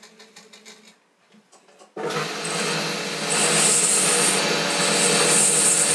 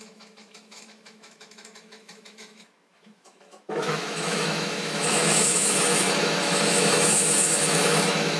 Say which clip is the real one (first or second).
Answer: first